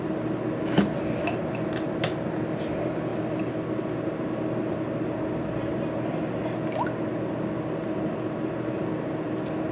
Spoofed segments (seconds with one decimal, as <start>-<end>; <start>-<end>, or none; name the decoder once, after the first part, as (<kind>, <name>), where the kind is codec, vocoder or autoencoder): none